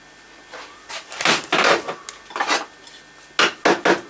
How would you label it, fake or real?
real